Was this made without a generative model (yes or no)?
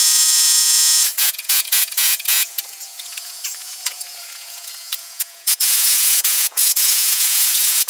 no